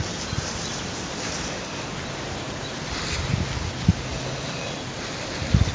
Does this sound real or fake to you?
real